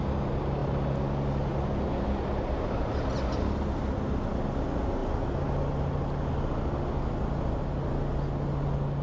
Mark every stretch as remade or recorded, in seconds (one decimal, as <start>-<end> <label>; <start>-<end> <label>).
0.0-9.0 recorded